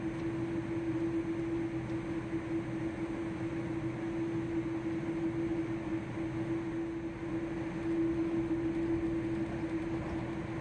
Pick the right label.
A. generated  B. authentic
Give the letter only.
B